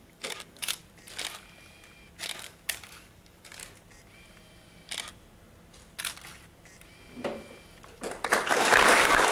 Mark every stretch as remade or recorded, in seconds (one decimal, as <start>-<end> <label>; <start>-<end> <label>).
0.0-0.8 remade; 0.8-2.2 recorded; 2.2-3.6 remade; 3.6-8.5 recorded; 8.5-9.3 remade